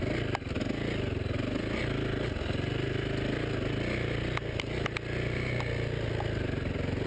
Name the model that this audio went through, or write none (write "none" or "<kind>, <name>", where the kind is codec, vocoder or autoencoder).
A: none